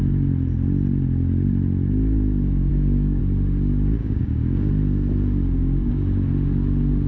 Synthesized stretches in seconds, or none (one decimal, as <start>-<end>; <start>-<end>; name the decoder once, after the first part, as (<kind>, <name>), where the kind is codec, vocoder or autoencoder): 2.7-3.2 (codec, DAC); 4.0-4.7; 5.6-6.3

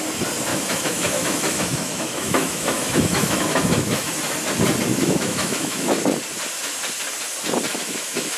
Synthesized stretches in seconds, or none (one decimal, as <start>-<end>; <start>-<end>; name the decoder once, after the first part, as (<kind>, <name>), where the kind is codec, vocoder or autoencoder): 0.5-4.1 (autoencoder, DAC-VAE); 4.9-5.9; 7.7-8.4